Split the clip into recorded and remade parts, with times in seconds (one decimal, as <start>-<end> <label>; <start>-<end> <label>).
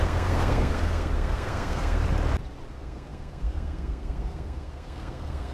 0.0-2.0 remade; 2.0-2.7 recorded; 2.7-5.5 remade